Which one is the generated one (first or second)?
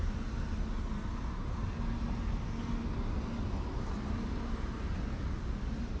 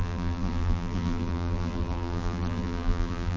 second